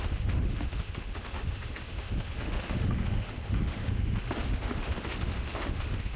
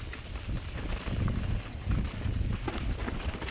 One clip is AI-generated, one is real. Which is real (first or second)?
second